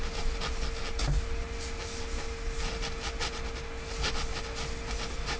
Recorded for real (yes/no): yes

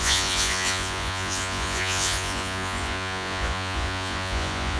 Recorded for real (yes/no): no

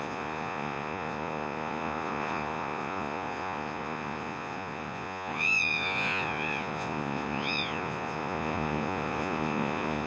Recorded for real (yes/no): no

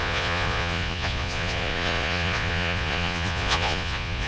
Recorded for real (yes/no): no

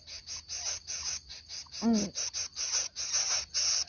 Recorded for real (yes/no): yes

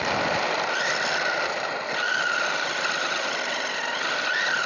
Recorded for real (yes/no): yes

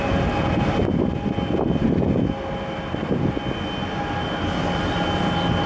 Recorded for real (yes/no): yes